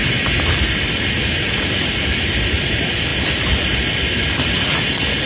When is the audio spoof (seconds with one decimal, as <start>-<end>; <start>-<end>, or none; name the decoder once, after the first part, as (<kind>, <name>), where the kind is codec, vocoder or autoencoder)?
none